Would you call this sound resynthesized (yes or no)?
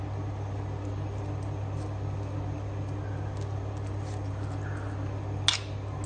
no